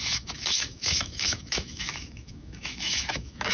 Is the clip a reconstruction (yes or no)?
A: yes